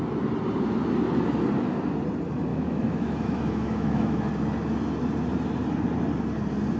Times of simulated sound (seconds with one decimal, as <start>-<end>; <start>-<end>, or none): 2.5-4.3

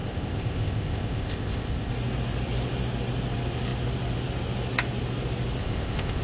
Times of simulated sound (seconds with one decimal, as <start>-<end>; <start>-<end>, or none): 0.0-1.9; 5.6-6.2